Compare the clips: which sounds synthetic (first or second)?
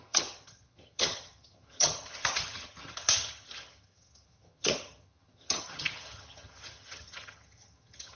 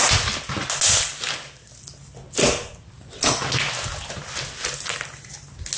first